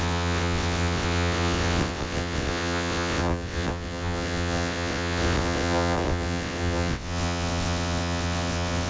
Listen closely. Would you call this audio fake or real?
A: fake